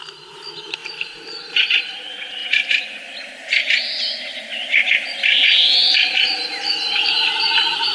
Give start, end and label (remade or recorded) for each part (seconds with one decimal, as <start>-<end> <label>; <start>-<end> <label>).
0.0-0.8 recorded; 0.8-1.7 remade; 1.7-2.4 recorded; 2.4-7.1 remade; 7.1-7.9 recorded